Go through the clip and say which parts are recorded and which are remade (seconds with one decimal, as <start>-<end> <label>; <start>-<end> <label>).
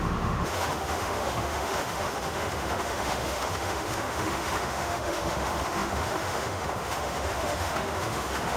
0.0-8.6 remade